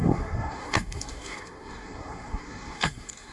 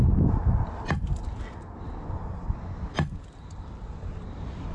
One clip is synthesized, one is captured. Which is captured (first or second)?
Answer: second